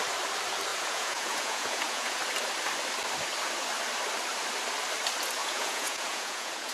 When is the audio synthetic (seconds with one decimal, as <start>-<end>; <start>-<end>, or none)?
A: 0.7-2.2; 5.4-6.7